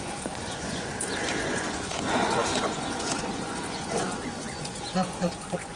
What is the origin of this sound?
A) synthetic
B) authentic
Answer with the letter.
A